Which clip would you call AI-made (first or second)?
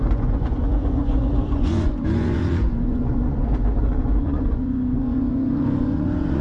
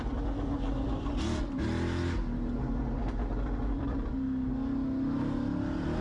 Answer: first